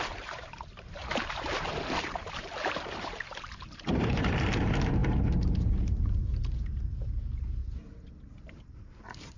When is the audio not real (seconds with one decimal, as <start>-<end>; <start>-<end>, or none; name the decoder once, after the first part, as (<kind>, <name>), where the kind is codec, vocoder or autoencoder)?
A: 0.0-7.6 (vocoder, BigVGAN v2); 8.6-9.4